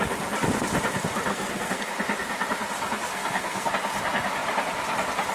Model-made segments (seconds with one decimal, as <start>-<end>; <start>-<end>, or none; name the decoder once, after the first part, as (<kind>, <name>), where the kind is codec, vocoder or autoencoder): 1.3-1.8 (codec, SNAC); 3.1-3.7